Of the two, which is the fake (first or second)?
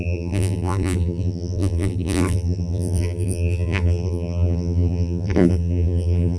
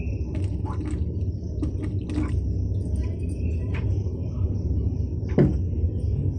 first